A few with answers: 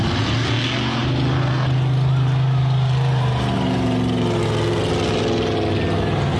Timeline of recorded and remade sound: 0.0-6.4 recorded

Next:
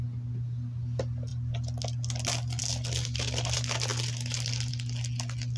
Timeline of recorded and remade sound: 0.0-5.6 recorded

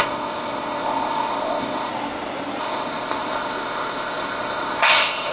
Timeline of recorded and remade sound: 0.0-1.9 remade; 1.9-2.6 recorded; 2.6-5.3 remade

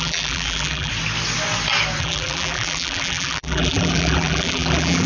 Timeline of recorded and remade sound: 0.0-0.9 remade; 0.9-2.0 recorded; 2.0-5.1 remade